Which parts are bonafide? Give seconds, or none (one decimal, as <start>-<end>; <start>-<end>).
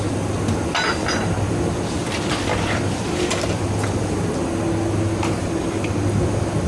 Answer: 0.0-0.9; 3.6-6.7